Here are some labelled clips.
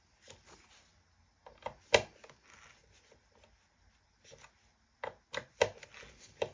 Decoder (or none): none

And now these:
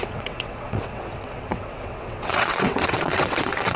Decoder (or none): vocoder, WaveNeXt